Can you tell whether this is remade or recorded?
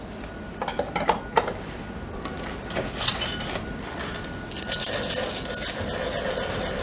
recorded